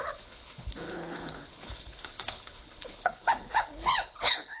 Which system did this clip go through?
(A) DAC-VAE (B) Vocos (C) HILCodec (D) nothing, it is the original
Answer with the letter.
C